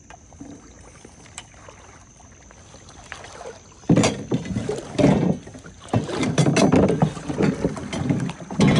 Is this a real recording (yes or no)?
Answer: yes